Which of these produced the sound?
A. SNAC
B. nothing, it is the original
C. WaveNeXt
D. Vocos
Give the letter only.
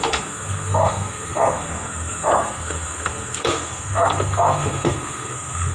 A